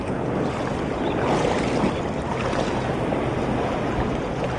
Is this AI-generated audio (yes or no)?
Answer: no